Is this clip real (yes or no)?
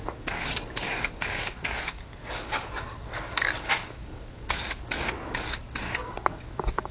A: no